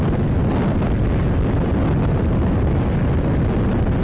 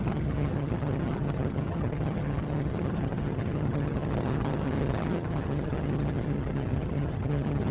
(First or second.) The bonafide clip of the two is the first